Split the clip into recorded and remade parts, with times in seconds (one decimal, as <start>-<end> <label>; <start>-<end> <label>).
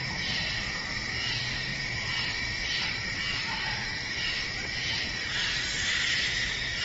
0.0-1.7 recorded; 1.7-5.1 remade; 5.1-6.8 recorded